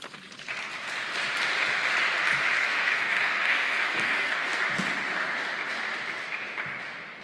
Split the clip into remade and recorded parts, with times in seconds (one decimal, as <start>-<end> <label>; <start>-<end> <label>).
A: 0.0-2.6 recorded; 2.6-4.6 remade; 4.6-7.2 recorded